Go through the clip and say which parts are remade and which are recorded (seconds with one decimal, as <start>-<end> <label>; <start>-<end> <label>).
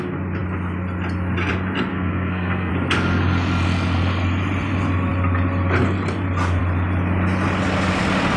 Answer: 0.0-1.9 recorded; 1.9-2.7 remade; 2.7-8.4 recorded